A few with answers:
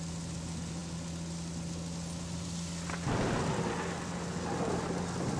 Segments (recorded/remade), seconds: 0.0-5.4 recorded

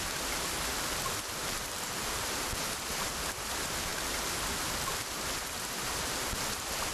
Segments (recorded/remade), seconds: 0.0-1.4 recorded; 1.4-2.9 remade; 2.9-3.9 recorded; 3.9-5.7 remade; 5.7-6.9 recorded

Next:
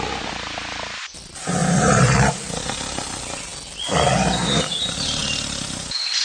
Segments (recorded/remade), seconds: 0.0-1.6 recorded; 1.6-2.4 remade; 2.4-6.2 recorded